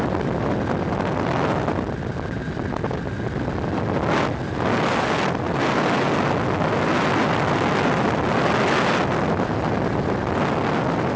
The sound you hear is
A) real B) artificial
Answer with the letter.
A